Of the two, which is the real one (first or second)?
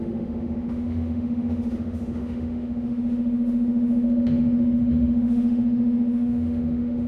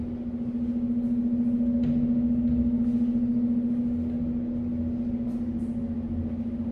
second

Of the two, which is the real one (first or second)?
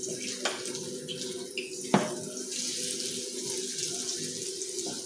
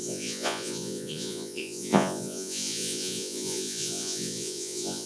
first